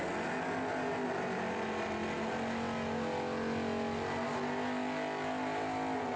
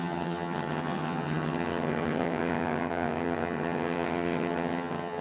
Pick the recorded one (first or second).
first